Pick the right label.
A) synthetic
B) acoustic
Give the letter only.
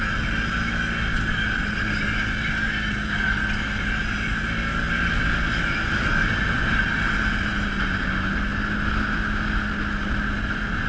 B